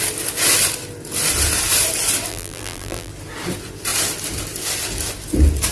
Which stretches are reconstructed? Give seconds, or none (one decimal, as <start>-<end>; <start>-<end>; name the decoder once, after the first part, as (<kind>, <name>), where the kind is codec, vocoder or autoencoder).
2.3-3.1 (vocoder, BigVGAN v2)